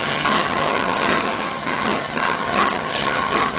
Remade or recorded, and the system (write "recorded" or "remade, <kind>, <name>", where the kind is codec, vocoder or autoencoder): remade, vocoder, HiFi-GAN